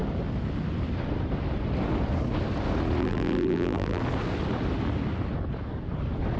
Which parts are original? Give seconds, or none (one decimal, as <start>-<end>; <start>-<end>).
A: 0.0-3.0; 4.0-6.4